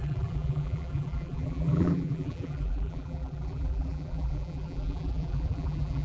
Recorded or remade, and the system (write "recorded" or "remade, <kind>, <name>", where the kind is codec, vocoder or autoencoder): remade, vocoder, BigVGAN v2